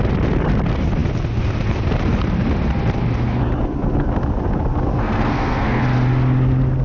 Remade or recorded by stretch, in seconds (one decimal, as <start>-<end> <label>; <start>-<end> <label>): 0.0-5.0 recorded; 5.0-5.8 remade; 5.8-6.8 recorded